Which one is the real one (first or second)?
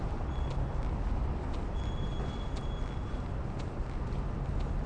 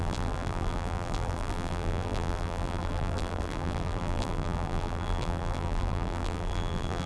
first